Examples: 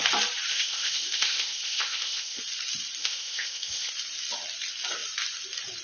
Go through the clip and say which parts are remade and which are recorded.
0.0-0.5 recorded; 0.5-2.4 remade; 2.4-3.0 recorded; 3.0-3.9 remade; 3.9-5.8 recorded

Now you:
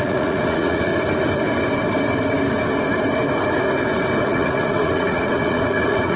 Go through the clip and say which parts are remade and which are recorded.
0.0-0.9 remade; 0.9-4.2 recorded; 4.2-6.2 remade

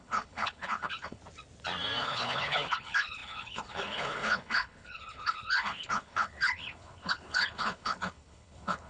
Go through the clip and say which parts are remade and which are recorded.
0.0-1.2 remade; 1.2-2.0 recorded; 2.0-8.9 remade

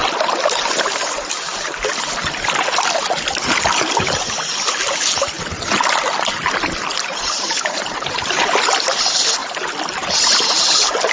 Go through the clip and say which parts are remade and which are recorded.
0.0-6.9 recorded; 6.9-8.4 remade; 8.4-11.1 recorded

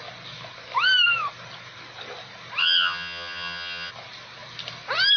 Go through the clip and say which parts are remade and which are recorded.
0.0-2.6 recorded; 2.6-3.9 remade; 3.9-5.2 recorded

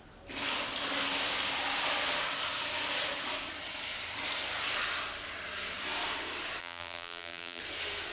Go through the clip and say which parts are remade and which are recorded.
0.0-6.6 recorded; 6.6-7.6 remade; 7.6-8.1 recorded

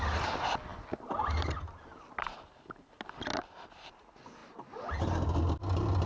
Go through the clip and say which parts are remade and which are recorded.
0.0-6.1 recorded